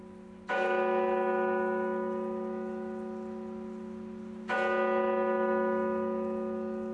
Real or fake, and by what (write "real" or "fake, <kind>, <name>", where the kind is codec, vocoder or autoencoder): real